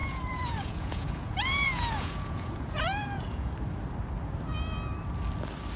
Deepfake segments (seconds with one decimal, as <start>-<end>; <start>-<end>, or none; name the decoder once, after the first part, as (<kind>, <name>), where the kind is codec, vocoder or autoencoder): 0.0-3.5 (vocoder, Vocos)